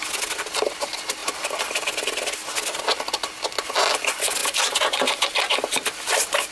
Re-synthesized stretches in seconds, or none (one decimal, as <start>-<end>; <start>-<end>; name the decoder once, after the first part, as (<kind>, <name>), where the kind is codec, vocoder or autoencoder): none